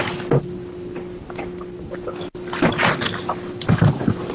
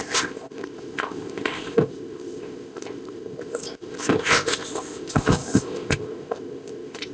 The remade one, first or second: second